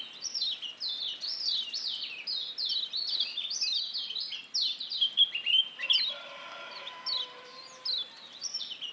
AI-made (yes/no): no